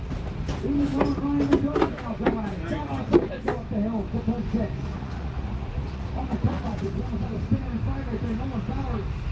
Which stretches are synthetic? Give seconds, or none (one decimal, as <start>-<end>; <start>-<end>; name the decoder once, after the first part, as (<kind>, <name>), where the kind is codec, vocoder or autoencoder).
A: 4.9-7.0 (vocoder, Vocos)